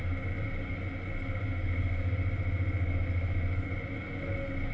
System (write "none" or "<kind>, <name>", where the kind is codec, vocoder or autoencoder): none